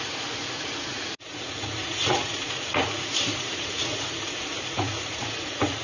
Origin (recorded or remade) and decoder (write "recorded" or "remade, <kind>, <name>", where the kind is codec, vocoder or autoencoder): remade, vocoder, Vocos